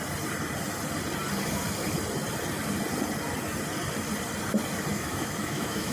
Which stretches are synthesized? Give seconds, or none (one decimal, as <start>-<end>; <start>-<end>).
4.9-5.9